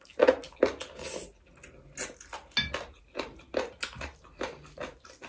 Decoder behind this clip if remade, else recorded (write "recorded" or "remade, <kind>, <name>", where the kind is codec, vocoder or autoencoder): recorded